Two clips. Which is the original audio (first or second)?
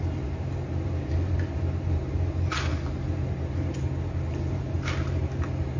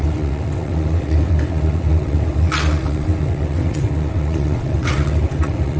first